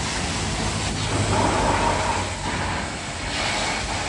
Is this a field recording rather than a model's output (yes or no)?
yes